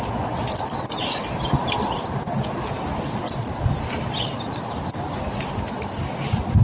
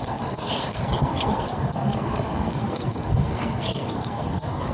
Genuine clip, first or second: first